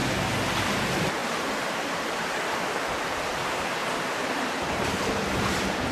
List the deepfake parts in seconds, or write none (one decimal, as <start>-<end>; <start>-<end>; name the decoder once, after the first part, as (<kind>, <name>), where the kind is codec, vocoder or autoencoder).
0.6-1.2 (vocoder, BigVGAN v2); 1.8-5.9